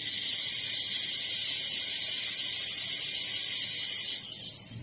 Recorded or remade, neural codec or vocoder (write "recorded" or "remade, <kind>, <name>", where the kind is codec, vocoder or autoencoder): recorded